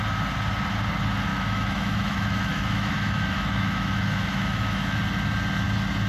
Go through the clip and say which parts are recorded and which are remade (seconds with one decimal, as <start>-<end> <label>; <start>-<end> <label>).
0.0-1.3 recorded; 1.3-5.0 remade; 5.0-6.1 recorded